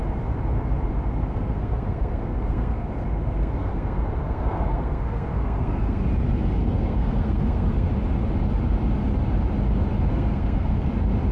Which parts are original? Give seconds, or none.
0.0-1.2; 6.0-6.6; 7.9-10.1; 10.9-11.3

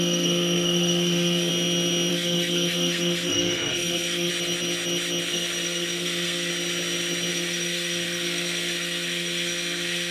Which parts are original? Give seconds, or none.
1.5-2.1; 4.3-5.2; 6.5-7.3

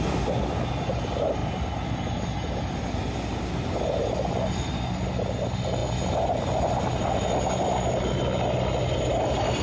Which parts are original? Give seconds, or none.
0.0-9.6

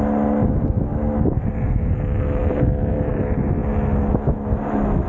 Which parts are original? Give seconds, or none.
0.0-5.1